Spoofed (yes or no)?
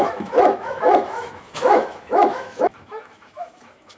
yes